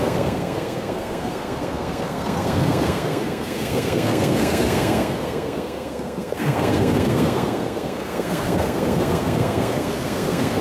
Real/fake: fake